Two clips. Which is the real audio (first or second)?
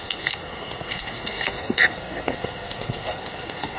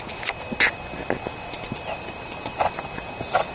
second